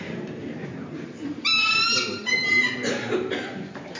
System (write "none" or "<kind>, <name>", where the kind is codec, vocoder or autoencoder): vocoder, BigVGAN v2